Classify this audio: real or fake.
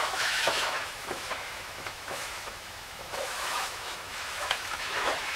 fake